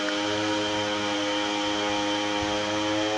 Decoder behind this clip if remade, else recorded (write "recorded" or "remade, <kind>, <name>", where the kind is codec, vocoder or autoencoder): recorded